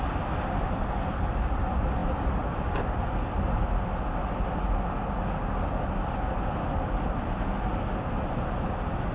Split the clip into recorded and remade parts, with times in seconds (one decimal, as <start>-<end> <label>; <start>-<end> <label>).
0.0-9.1 recorded